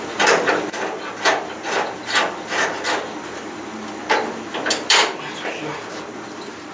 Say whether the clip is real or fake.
real